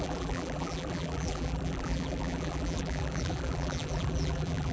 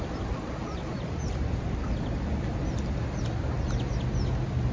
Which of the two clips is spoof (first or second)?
first